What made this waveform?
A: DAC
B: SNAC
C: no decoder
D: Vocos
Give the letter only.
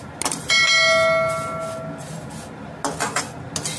C